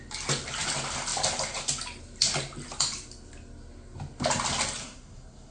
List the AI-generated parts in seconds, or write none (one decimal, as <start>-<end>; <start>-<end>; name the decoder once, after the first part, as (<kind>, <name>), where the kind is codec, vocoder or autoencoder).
4.8-5.5 (codec, SNAC)